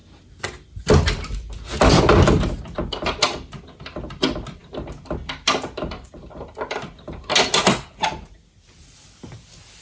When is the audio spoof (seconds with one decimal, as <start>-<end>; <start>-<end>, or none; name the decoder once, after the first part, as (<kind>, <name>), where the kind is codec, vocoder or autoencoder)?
none